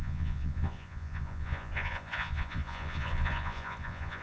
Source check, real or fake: fake